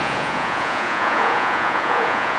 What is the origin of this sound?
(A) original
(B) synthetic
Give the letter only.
B